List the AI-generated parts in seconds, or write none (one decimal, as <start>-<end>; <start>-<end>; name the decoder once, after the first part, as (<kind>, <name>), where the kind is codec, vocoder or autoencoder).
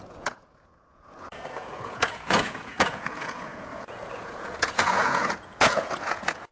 0.0-6.5 (vocoder, Vocos)